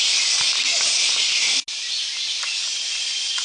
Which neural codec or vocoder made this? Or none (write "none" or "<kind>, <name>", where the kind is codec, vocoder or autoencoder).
none